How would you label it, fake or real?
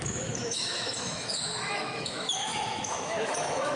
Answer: fake